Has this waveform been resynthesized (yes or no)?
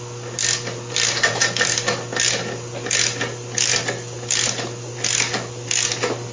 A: no